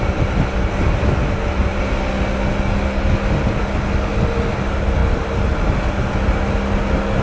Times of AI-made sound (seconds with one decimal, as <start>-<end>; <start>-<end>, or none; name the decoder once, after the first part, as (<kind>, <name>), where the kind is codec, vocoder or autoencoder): none